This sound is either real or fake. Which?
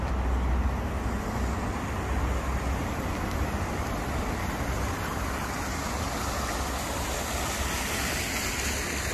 real